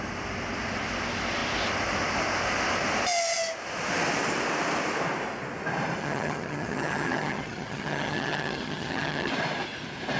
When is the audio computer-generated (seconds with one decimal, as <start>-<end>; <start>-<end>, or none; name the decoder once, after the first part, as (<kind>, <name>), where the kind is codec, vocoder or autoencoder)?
6.0-9.3 (vocoder, HiFi-GAN)